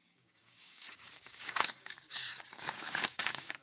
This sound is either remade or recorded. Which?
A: remade